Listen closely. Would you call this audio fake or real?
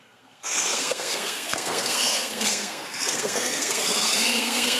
fake